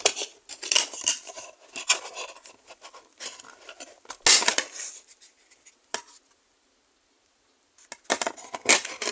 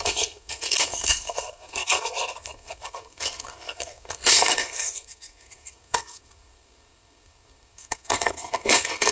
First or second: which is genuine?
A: first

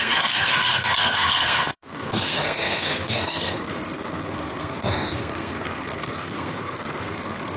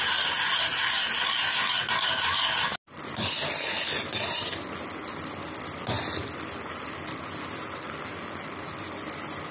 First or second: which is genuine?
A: second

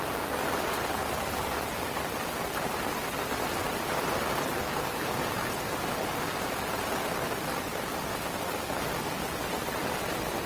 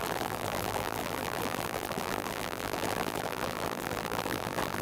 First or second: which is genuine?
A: first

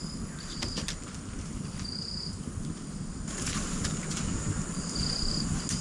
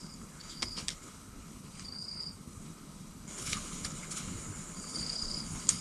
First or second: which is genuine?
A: first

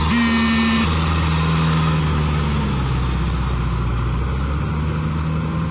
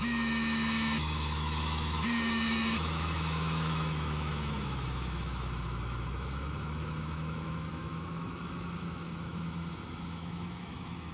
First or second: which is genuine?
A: first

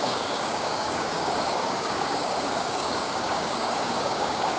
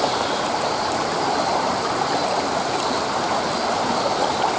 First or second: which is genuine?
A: second